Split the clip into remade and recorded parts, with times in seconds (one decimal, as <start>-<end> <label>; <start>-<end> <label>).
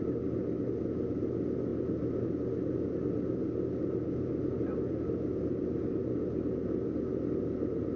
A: 0.0-8.0 recorded